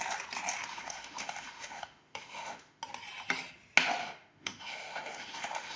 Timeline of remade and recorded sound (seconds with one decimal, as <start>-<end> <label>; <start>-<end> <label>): 0.0-0.7 recorded; 0.7-2.8 remade; 2.8-4.0 recorded; 4.0-5.8 remade